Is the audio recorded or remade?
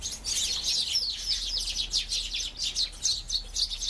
recorded